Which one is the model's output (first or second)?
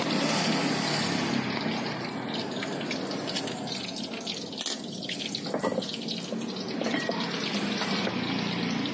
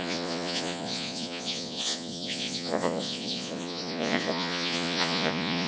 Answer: second